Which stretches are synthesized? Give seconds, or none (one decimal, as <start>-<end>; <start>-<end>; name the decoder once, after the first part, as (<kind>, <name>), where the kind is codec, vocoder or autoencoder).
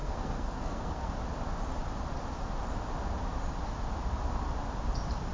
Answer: 0.0-1.1 (codec, SNAC)